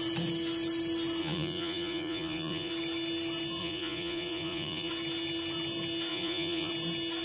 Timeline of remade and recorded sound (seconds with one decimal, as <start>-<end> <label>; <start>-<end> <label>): 0.0-1.2 recorded; 1.2-2.7 remade; 2.7-3.6 recorded; 3.6-4.9 remade; 4.9-6.1 recorded; 6.1-6.7 remade; 6.7-7.2 recorded